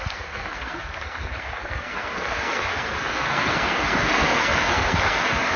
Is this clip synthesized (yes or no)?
yes